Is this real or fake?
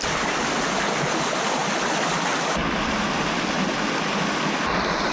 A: real